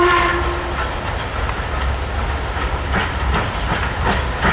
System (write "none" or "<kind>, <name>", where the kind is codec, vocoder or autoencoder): none